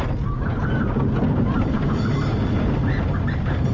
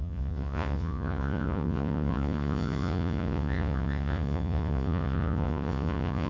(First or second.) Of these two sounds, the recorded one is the first